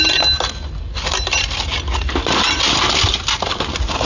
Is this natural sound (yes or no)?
yes